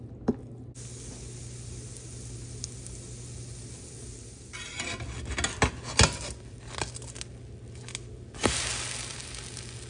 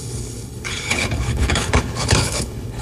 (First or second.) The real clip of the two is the first